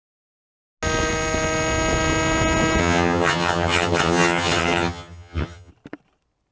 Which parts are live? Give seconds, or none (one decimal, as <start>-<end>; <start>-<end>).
0.0-2.8; 5.7-6.5